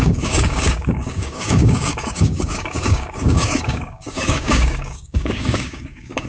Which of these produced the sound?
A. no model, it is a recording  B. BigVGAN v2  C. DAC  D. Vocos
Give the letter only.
C